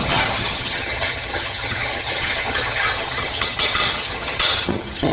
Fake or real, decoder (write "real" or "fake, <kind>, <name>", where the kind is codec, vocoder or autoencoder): fake, vocoder, HiFi-GAN